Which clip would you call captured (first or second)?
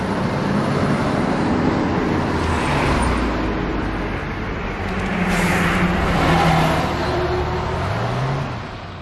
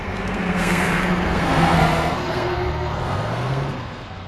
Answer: first